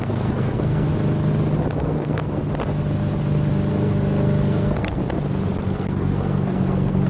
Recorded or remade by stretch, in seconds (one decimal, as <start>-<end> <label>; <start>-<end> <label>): 0.0-0.9 remade; 0.9-1.8 recorded; 1.8-2.4 remade; 2.4-3.7 recorded; 3.7-5.0 remade; 5.0-5.6 recorded; 5.6-7.1 remade